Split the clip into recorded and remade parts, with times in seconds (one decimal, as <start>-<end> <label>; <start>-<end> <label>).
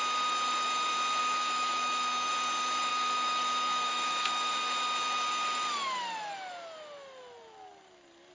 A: 0.0-1.2 recorded; 1.2-2.3 remade; 2.3-2.9 recorded; 2.9-4.5 remade; 4.5-8.3 recorded